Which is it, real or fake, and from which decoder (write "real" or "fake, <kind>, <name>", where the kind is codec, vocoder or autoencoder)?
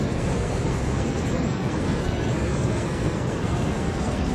fake, codec, SNAC